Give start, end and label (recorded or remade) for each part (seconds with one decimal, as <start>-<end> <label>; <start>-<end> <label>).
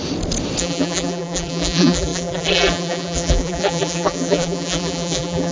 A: 0.0-0.6 recorded; 0.6-5.5 remade